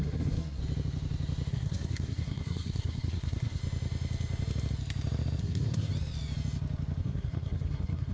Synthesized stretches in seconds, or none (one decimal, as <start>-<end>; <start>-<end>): 0.0-0.6; 1.5-3.6; 5.4-5.9; 7.0-8.1